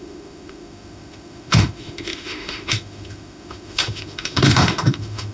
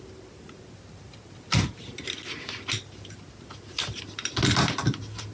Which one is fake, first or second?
first